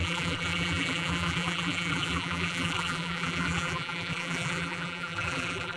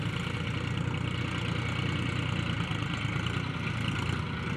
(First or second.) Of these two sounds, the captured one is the second